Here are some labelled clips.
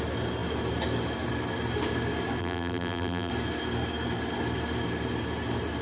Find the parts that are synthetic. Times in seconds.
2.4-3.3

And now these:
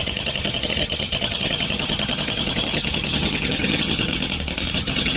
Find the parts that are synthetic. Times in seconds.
0.0-4.1; 4.7-5.2

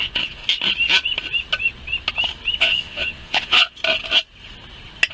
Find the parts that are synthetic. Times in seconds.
0.0-0.4; 2.6-3.8

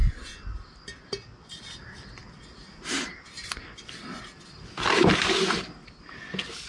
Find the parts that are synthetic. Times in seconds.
none

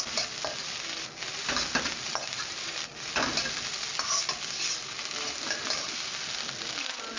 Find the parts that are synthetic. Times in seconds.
none

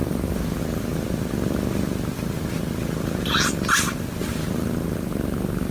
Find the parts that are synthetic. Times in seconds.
none

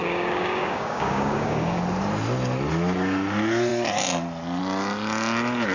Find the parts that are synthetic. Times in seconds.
0.0-1.8